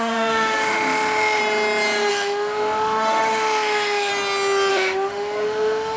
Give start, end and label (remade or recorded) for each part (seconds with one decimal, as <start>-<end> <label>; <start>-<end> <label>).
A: 0.0-1.4 remade; 1.4-2.1 recorded; 2.1-4.1 remade; 4.1-4.7 recorded; 4.7-6.0 remade